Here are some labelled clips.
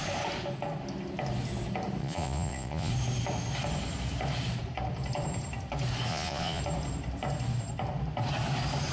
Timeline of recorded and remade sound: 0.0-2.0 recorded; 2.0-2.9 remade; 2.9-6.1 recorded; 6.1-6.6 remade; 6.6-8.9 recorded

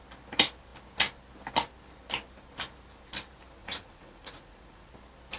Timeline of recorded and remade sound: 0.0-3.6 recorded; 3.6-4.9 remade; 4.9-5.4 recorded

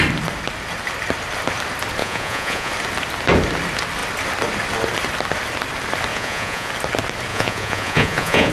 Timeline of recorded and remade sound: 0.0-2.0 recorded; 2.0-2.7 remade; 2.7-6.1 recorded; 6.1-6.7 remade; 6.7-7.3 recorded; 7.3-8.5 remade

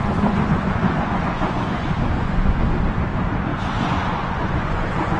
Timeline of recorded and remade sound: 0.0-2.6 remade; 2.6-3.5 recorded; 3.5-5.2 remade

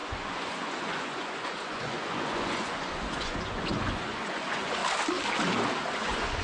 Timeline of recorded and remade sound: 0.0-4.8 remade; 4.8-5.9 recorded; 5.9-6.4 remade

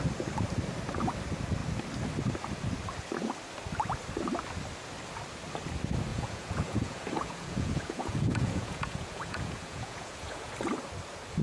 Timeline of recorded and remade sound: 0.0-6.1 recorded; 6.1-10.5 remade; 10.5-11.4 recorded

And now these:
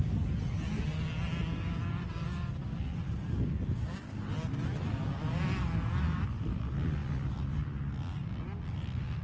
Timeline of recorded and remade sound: 0.0-9.2 recorded